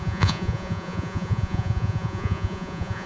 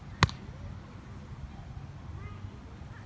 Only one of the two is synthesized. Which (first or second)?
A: first